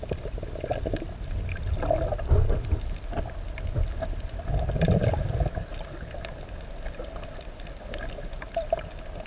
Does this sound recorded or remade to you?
recorded